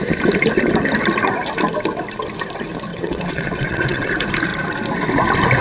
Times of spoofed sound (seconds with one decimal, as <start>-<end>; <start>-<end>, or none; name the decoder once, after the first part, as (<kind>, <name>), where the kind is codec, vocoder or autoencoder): 2.9-4.1 (vocoder, WaveNeXt)